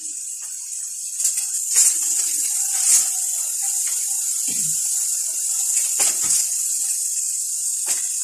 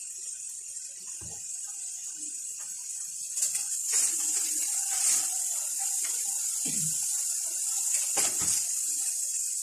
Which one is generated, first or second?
second